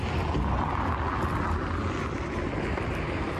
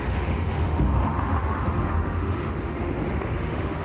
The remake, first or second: second